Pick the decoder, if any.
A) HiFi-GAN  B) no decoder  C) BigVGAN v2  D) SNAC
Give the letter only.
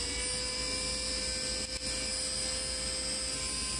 B